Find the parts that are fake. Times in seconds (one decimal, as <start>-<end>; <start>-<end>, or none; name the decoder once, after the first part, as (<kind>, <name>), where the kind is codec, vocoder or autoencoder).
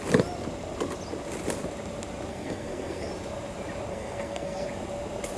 2.3-3.1 (codec, SNAC); 3.9-4.7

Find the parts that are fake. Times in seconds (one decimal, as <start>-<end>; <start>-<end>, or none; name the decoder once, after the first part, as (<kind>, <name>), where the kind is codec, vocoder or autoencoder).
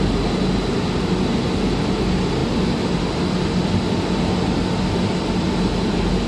none